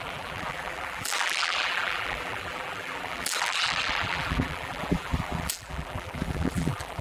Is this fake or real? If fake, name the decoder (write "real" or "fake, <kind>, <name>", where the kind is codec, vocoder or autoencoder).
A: fake, vocoder, BigVGAN v2